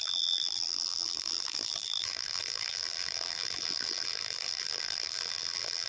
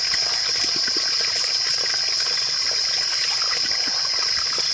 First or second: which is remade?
first